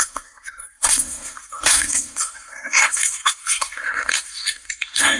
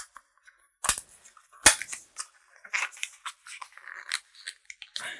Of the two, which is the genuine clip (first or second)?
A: second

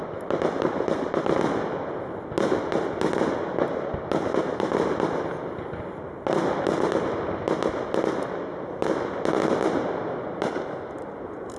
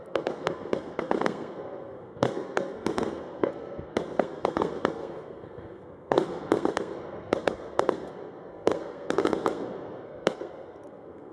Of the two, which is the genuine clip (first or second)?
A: first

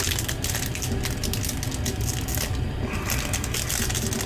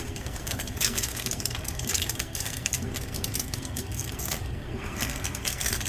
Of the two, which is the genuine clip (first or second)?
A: first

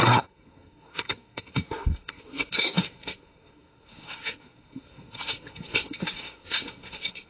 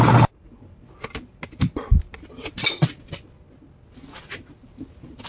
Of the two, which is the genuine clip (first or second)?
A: second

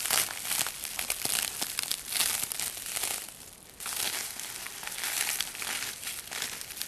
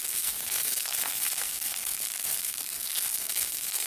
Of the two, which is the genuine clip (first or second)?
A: first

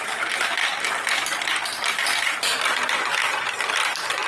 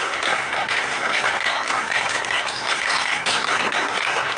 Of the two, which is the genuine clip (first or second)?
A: first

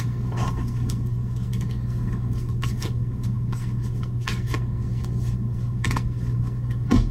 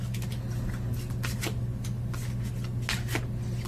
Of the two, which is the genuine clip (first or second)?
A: second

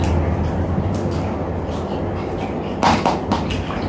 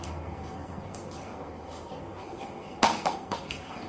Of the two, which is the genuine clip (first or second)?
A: first